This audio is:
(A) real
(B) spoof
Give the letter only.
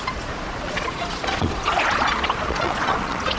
B